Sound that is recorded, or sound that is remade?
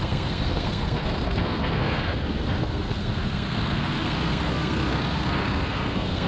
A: remade